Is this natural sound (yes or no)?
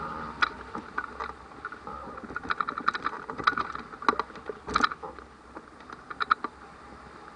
yes